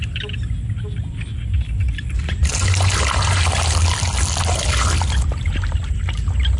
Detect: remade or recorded recorded